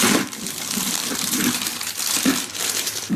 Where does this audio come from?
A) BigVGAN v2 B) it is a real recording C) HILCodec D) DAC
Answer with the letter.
A